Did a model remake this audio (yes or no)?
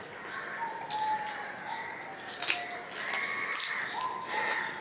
no